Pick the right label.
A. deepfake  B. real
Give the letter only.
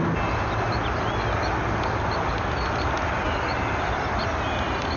B